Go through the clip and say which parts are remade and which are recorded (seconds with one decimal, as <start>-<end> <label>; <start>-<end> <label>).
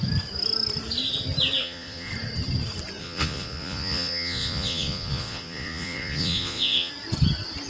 0.0-1.6 recorded; 1.6-2.1 remade; 2.1-3.0 recorded; 3.0-6.9 remade; 6.9-7.7 recorded